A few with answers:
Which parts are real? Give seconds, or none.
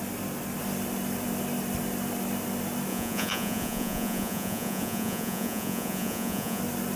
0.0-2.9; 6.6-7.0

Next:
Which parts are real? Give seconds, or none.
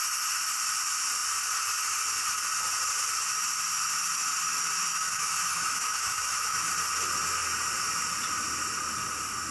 0.0-4.9; 6.7-9.5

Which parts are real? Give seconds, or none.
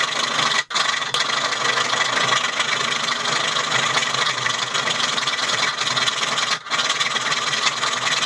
0.0-4.0; 5.8-8.3